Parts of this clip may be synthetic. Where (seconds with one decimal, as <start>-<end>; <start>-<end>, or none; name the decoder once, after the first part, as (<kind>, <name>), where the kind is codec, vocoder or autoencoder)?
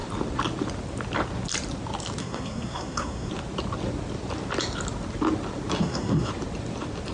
2.2-3.3 (codec, SNAC); 5.8-6.3